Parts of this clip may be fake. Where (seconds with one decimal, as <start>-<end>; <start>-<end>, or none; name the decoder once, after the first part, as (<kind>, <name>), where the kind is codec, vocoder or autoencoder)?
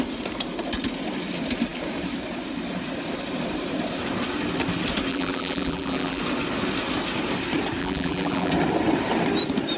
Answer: 5.1-6.2 (vocoder, BigVGAN v2); 7.8-8.5